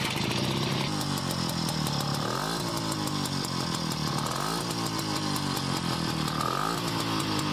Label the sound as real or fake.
real